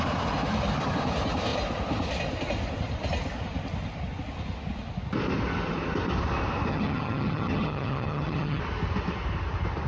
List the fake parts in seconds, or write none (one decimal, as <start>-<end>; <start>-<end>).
6.7-8.6